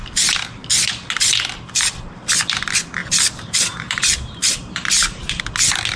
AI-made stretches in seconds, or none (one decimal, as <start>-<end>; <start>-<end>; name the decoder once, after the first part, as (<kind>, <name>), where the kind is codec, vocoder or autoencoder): 3.0-5.4 (vocoder, BigVGAN v2)